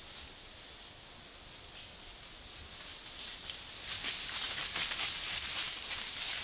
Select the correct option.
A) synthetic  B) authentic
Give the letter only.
B